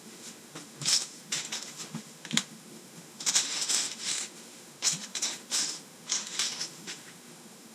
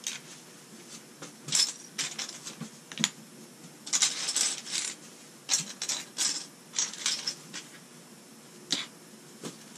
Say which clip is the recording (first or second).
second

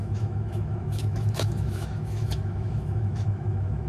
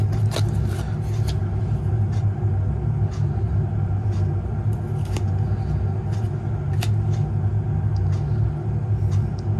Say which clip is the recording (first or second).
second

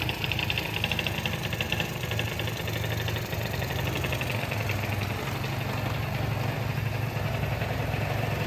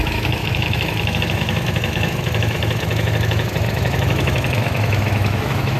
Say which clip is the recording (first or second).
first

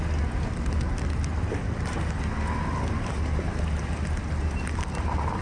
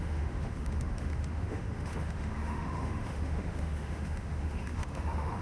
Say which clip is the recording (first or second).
first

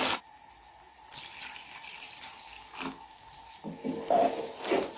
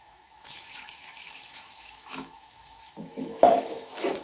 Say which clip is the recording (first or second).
first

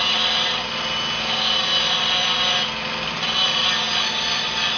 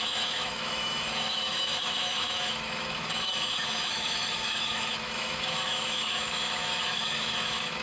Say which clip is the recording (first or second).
first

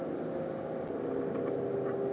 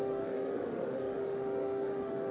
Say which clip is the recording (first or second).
first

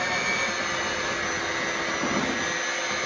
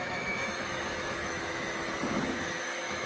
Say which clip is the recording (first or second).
first